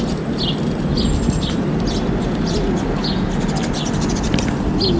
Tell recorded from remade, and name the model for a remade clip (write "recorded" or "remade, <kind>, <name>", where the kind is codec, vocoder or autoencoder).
recorded